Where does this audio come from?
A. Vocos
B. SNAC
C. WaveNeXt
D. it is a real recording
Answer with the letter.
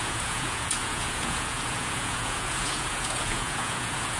A